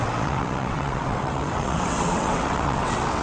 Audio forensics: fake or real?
fake